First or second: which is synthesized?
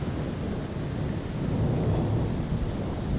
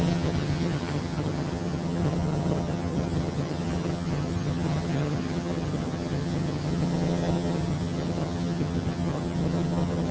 second